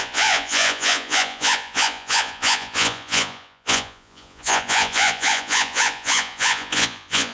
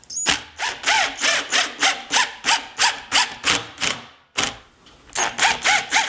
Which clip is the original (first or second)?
second